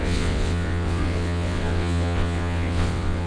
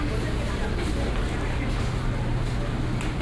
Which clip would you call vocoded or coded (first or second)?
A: first